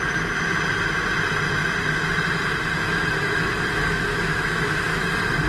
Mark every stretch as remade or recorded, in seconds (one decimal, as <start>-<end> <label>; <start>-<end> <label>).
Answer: 0.0-2.8 recorded; 2.8-5.0 remade; 5.0-5.5 recorded